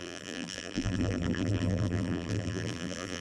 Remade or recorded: remade